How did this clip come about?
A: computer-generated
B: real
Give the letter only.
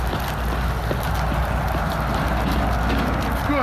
B